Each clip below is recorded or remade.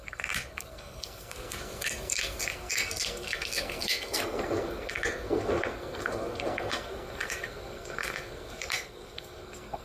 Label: remade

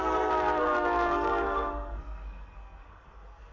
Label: remade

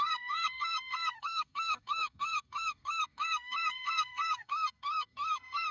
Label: remade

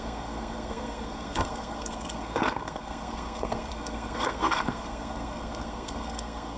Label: remade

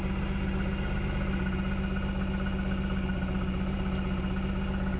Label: recorded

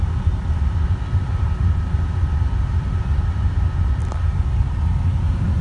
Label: recorded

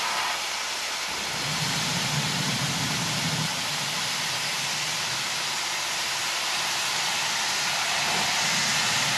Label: recorded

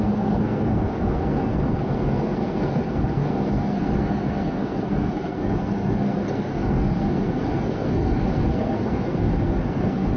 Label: remade